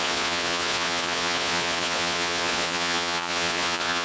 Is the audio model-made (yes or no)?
yes